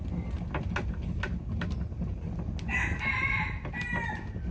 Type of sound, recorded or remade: recorded